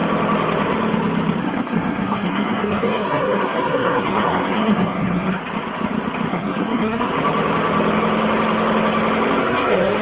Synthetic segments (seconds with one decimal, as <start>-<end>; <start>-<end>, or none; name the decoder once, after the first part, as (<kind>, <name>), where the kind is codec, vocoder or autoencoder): 1.4-5.4 (codec, SNAC); 6.3-7.1; 9.4-10.0